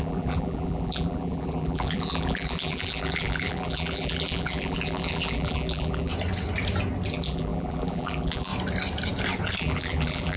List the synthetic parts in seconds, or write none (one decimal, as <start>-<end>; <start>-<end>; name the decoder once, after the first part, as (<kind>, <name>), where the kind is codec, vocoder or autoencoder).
0.0-6.1 (vocoder, BigVGAN v2); 7.1-8.5; 9.6-10.4